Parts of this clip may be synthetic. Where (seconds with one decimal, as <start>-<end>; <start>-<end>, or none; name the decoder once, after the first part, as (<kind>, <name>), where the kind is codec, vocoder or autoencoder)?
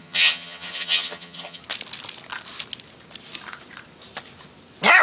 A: 0.0-1.6 (vocoder, HiFi-GAN)